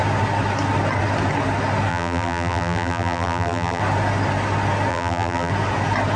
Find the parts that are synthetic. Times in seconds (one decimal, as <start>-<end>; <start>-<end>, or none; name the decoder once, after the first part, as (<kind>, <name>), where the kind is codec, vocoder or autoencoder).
1.9-3.8 (vocoder, BigVGAN v2); 4.9-5.5